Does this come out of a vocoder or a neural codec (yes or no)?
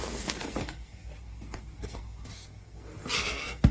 yes